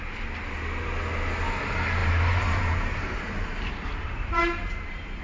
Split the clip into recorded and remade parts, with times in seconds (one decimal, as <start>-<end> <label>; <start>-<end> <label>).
0.0-2.0 recorded; 2.0-5.2 remade